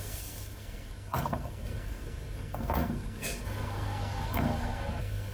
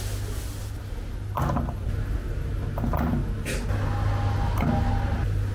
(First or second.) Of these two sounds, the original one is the second